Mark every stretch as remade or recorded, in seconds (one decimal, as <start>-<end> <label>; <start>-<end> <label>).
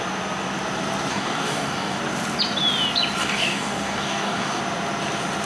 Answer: 0.0-1.1 recorded; 1.1-2.0 remade; 2.0-3.2 recorded; 3.2-4.6 remade; 4.6-5.5 recorded